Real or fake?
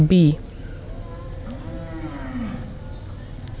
real